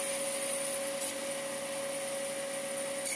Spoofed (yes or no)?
no